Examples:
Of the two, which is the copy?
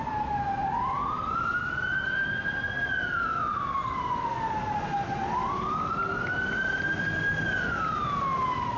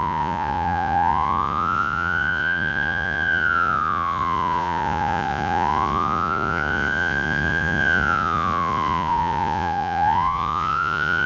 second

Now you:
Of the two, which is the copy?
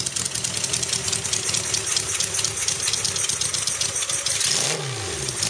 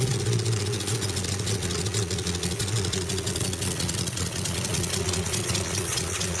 second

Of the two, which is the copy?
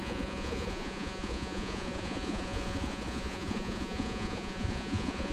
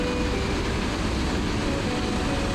first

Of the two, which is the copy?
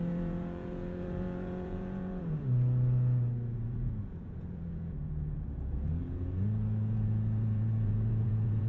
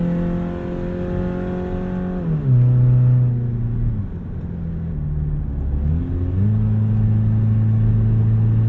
first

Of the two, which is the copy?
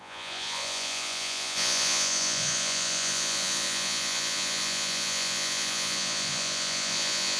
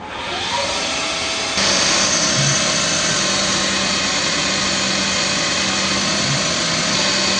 first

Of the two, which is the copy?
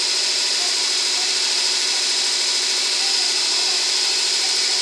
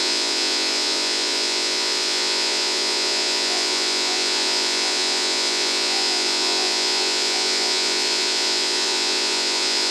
second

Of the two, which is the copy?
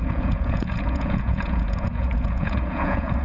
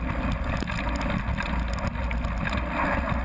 first